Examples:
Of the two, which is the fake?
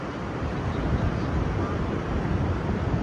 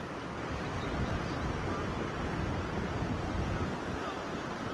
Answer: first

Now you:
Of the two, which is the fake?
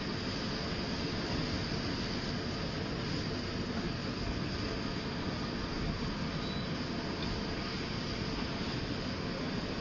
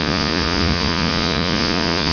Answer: second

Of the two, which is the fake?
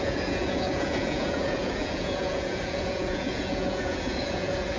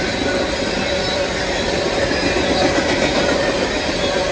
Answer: first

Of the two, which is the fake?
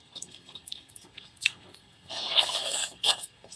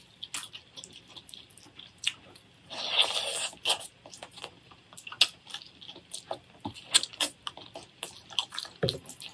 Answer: first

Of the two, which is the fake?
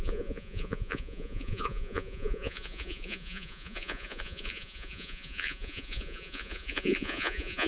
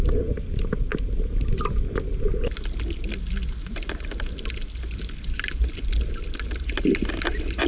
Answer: first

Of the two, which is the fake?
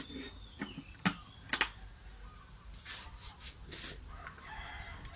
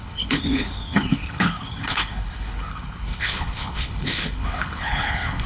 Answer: second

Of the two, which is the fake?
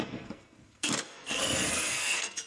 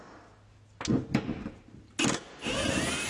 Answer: first